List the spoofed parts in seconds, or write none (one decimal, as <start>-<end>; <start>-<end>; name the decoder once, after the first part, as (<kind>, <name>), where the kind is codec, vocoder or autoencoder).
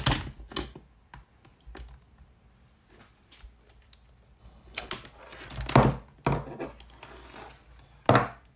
4.4-4.9 (codec, HILCodec)